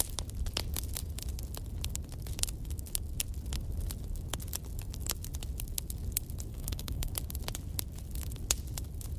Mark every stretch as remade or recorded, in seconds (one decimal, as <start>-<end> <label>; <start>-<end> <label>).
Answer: 0.0-6.5 recorded; 6.5-7.1 remade; 7.1-9.2 recorded